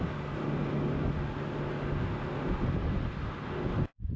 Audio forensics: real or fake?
real